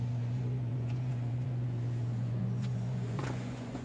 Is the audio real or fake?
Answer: fake